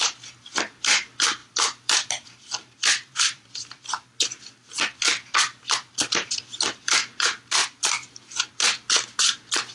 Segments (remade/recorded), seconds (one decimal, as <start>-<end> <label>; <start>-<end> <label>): 0.0-1.4 recorded; 1.4-4.4 remade; 4.4-7.6 recorded; 7.6-8.5 remade; 8.5-9.7 recorded